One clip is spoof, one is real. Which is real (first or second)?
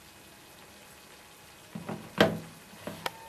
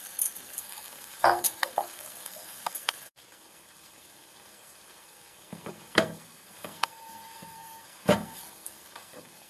first